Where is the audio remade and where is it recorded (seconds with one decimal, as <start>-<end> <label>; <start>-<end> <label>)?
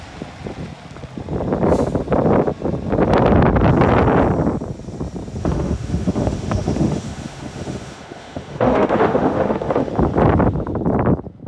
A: 0.0-5.4 recorded; 5.4-9.9 remade; 9.9-11.5 recorded